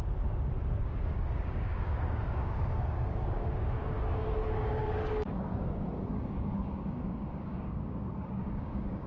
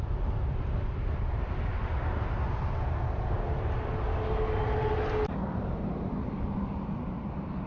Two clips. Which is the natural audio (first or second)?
second